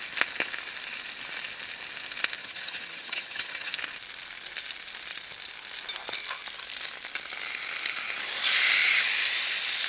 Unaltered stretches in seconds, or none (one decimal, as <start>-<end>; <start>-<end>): 0.0-2.4; 3.7-9.9